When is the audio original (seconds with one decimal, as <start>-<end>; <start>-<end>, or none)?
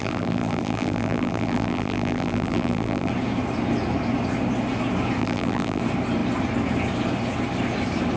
3.1-5.2; 5.8-8.2